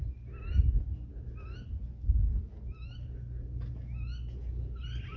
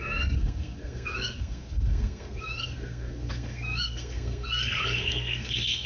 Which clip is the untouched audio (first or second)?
first